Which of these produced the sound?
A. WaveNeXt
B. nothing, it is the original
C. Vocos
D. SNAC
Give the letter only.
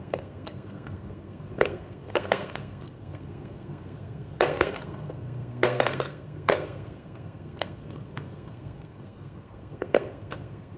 D